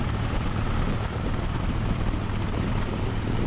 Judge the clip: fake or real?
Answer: fake